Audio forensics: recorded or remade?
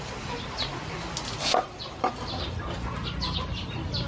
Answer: recorded